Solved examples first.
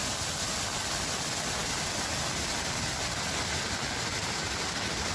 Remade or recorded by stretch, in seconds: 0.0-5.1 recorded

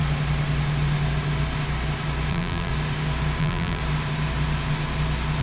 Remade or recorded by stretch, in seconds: 0.0-2.3 recorded; 2.3-2.7 remade; 2.7-3.4 recorded; 3.4-3.8 remade; 3.8-5.4 recorded

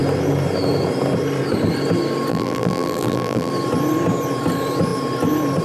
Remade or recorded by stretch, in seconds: 0.0-2.3 recorded; 2.3-3.5 remade; 3.5-5.6 recorded

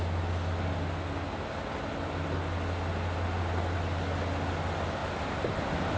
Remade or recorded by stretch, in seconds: 0.0-5.0 recorded; 5.0-6.0 remade

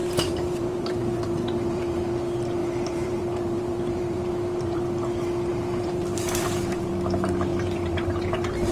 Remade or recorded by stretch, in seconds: 0.0-2.1 remade; 2.1-2.6 recorded; 2.6-4.8 remade; 4.8-5.5 recorded; 5.5-6.9 remade; 6.9-7.5 recorded; 7.5-8.7 remade

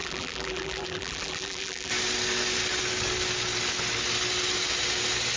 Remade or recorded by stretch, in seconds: 0.0-1.9 remade; 1.9-5.4 recorded

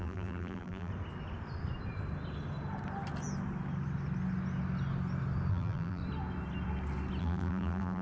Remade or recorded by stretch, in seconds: 0.0-0.9 remade; 0.9-5.5 recorded; 5.5-6.0 remade; 6.0-7.2 recorded; 7.2-8.0 remade

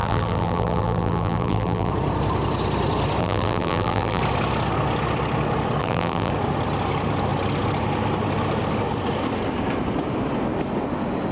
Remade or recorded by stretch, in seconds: 0.0-1.9 remade; 1.9-3.2 recorded; 3.2-4.2 remade; 4.2-5.8 recorded; 5.8-6.3 remade; 6.3-11.3 recorded